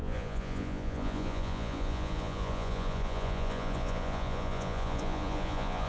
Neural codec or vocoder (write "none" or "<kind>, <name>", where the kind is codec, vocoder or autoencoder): vocoder, Vocos